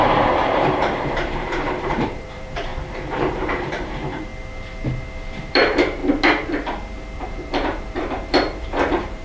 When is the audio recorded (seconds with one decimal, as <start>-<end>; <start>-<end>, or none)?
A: 2.7-3.3; 4.3-5.4; 6.0-7.2